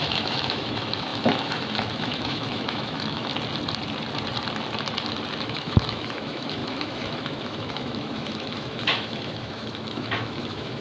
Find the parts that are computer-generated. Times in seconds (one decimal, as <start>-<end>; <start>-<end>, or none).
0.0-3.3; 5.4-10.8